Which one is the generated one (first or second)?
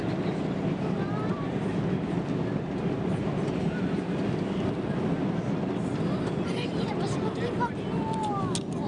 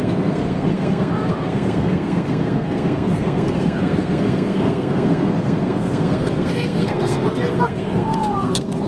second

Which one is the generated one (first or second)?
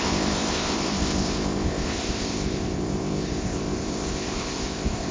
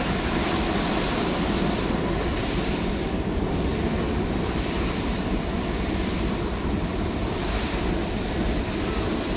first